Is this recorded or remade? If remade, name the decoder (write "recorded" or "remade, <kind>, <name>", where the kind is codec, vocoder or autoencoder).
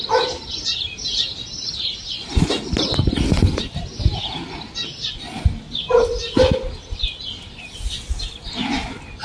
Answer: recorded